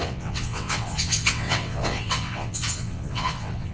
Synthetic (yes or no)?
yes